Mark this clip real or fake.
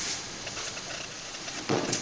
fake